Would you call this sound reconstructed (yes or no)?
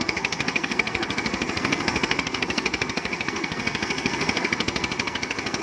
yes